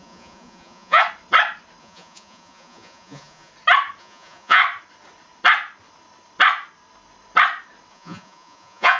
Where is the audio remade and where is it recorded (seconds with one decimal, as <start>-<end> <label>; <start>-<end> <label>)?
0.0-1.0 remade; 1.0-1.8 recorded; 1.8-3.5 remade; 3.5-4.0 recorded; 4.0-4.6 remade; 4.6-7.9 recorded; 7.9-9.0 remade